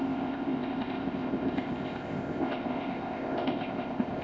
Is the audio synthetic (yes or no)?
yes